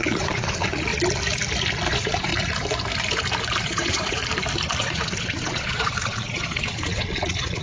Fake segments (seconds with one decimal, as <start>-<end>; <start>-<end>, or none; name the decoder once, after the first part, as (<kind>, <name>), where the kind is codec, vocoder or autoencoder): 0.0-0.9 (vocoder, Vocos); 1.9-2.3; 3.6-4.2; 4.8-7.6

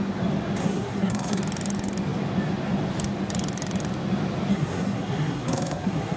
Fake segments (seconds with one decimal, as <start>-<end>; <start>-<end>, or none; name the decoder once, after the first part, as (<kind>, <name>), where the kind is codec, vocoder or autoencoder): 0.6-1.4 (codec, SNAC); 4.5-6.2

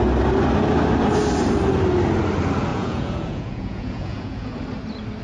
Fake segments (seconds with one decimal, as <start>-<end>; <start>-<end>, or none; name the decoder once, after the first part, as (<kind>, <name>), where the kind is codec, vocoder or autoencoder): 2.7-4.5 (vocoder, Vocos)

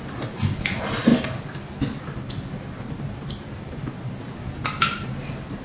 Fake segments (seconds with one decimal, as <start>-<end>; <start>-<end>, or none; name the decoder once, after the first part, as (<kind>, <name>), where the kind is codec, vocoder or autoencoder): none

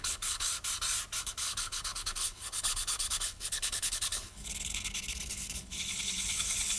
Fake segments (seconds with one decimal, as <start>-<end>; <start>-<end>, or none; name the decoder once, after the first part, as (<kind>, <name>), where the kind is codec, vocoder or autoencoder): 0.0-0.5 (codec, HILCodec); 1.2-6.8